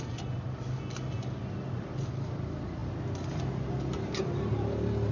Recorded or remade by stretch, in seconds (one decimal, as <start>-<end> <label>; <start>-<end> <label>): 0.0-5.1 recorded